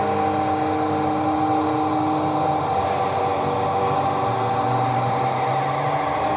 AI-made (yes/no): no